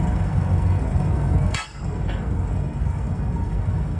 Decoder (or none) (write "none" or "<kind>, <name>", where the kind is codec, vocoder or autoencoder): codec, SNAC